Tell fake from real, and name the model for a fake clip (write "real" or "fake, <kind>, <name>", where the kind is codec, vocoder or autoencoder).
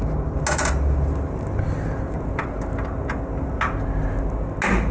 real